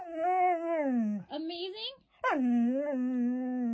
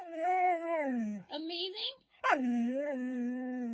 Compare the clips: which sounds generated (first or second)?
second